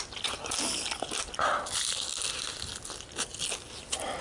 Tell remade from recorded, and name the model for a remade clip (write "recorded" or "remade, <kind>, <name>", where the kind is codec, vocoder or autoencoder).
recorded